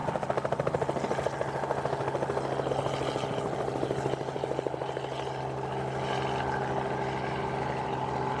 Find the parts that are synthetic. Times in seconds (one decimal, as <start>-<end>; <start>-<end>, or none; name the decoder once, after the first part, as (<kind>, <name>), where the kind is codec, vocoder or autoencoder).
none